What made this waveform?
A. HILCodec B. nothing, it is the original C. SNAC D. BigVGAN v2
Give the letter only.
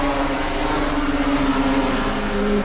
D